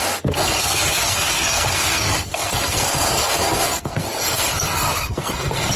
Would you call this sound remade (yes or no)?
yes